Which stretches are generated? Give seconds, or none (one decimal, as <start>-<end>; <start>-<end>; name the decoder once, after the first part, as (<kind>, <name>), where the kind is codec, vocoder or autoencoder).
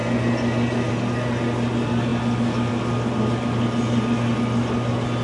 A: none